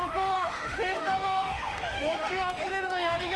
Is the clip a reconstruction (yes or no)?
yes